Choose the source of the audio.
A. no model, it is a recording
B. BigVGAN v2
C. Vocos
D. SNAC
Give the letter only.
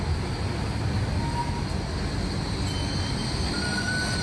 A